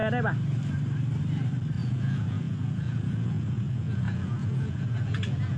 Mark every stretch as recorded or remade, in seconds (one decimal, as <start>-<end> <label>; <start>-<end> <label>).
0.0-1.8 recorded; 1.8-5.6 remade